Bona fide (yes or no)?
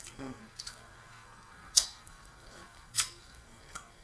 no